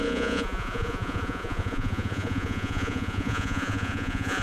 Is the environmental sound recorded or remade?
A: remade